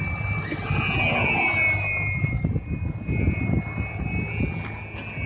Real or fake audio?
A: real